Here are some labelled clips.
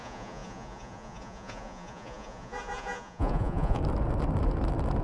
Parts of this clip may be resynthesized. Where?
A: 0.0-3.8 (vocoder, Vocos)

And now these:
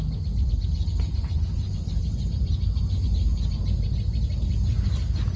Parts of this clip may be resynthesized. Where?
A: 3.3-4.0 (vocoder, Vocos)

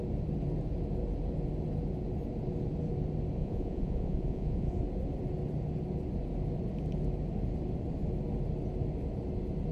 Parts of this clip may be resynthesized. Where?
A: 3.4-4.8 (vocoder, Vocos)

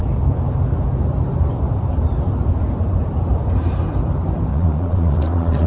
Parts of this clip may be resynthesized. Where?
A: 4.5-5.7 (vocoder, Vocos)

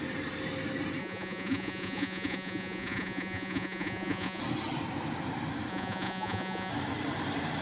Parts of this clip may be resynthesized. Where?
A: 1.0-4.4 (vocoder, Vocos); 5.7-6.7

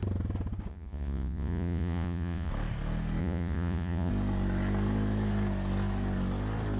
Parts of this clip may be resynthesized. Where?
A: 0.7-2.5 (vocoder, Vocos); 3.2-4.1

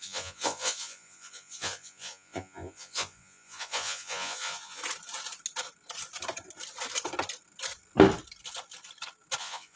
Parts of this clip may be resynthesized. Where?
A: 0.0-4.8 (vocoder, Vocos); 9.4-9.8

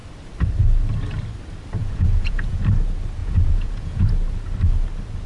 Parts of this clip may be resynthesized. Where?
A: 1.8-2.6 (vocoder, Vocos); 3.2-4.0